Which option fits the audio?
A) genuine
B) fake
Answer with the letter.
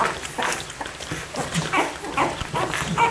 A